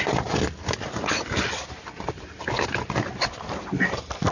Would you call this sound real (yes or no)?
yes